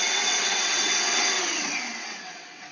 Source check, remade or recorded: remade